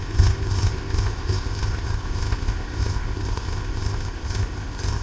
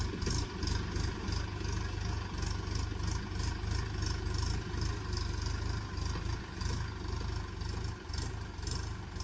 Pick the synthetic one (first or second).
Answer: first